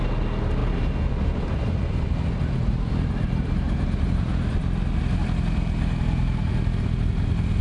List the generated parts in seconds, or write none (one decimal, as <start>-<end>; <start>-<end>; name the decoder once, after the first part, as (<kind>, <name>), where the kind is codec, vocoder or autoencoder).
0.6-4.5 (vocoder, BigVGAN v2)